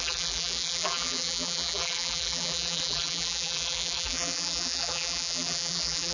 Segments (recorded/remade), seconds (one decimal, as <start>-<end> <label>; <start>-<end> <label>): 0.0-6.1 remade